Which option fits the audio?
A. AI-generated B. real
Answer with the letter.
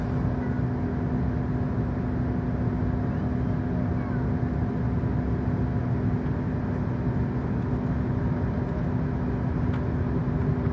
B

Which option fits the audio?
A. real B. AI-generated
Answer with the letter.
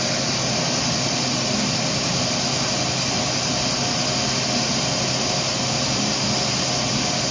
A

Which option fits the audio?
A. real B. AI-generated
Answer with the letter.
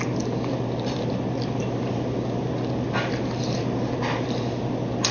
A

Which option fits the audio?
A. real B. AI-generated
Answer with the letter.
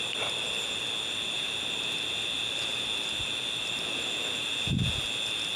A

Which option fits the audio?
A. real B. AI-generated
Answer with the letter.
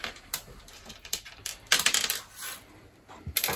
B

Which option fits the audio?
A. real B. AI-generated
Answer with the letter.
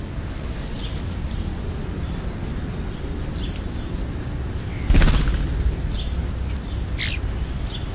A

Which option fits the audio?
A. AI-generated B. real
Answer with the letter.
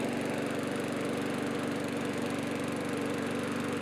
B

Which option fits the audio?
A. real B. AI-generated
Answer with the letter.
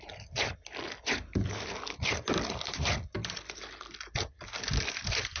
B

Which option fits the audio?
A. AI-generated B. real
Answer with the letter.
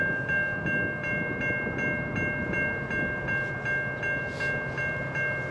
B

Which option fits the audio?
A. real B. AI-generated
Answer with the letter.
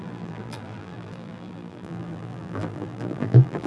B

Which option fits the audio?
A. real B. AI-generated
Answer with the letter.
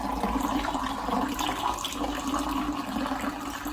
A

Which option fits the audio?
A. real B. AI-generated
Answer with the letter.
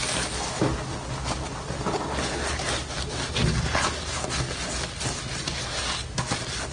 A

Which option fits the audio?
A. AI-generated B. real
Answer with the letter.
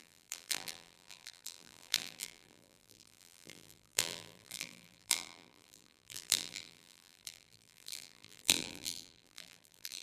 A